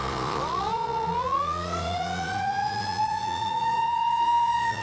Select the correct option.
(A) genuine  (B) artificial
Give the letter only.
B